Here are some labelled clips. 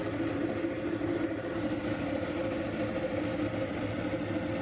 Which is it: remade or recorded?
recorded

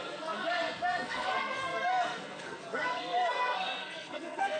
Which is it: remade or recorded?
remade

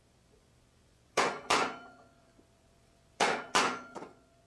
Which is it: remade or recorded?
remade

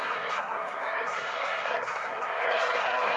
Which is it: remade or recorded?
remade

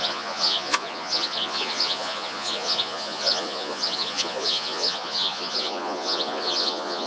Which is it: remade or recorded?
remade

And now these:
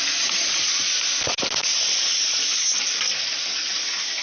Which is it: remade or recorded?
recorded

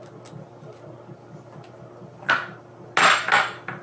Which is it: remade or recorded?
recorded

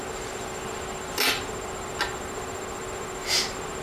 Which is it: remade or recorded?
recorded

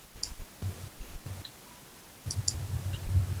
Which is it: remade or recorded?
recorded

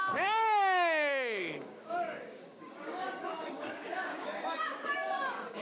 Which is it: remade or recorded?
remade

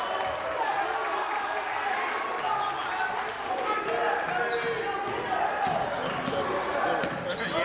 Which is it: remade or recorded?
recorded